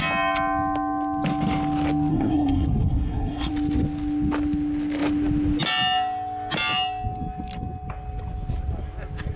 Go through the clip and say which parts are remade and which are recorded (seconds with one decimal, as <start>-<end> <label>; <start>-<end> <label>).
0.0-2.1 recorded; 2.1-3.5 remade; 3.5-9.4 recorded

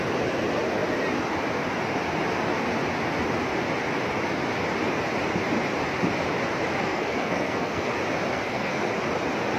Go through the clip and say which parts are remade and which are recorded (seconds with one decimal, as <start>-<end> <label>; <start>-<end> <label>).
0.0-6.8 recorded; 6.8-7.9 remade; 7.9-8.3 recorded; 8.3-8.9 remade; 8.9-9.6 recorded